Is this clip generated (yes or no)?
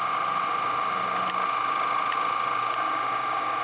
no